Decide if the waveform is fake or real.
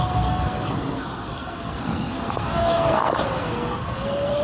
fake